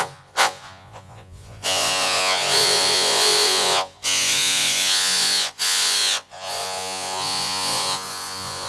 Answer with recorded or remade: remade